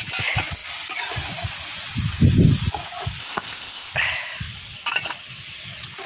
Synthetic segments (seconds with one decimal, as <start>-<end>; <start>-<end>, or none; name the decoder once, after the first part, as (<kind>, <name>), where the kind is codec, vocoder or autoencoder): 3.2-3.9 (codec, ZipCodec)